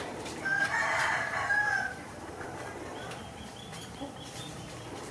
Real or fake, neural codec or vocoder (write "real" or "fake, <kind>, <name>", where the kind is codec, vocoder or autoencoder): fake, vocoder, BigVGAN v2